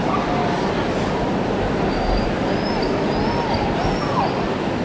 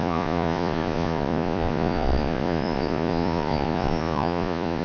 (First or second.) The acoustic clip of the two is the first